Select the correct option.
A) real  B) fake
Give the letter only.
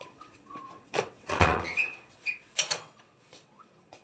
B